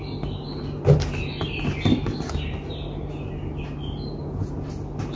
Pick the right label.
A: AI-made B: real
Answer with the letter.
B